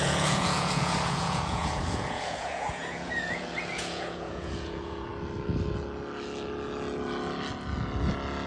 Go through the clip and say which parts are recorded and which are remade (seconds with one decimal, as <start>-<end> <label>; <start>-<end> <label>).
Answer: 0.0-5.1 remade; 5.1-8.5 recorded